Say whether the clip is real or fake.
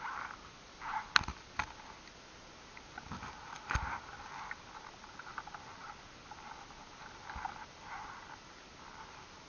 real